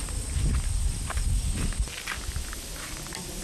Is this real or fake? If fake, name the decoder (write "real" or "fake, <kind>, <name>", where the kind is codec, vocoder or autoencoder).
real